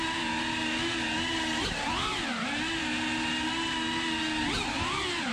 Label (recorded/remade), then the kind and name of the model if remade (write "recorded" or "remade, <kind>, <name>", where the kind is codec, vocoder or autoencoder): recorded